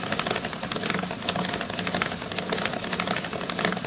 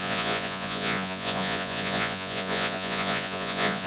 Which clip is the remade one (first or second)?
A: second